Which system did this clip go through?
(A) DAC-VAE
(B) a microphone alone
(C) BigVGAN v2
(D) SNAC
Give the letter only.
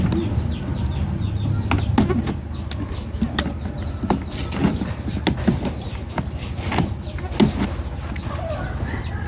B